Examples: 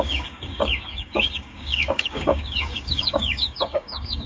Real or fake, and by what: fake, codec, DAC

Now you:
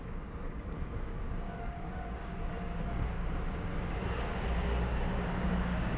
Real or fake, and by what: fake, codec, DAC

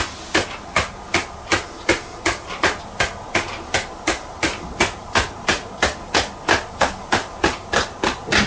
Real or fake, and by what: real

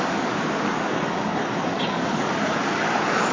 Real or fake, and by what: fake, codec, DAC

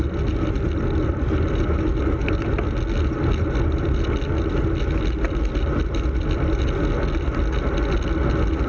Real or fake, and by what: real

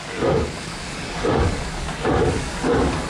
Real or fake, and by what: fake, codec, DAC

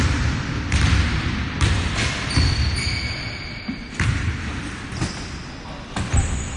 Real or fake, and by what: real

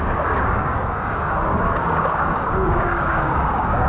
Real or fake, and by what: fake, codec, DAC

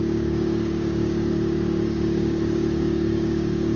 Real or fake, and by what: fake, codec, DAC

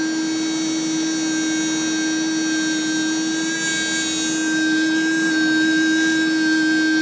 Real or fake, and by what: real